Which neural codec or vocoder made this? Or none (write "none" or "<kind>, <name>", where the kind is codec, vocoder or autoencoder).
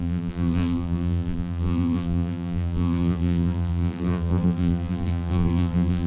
vocoder, BigVGAN v2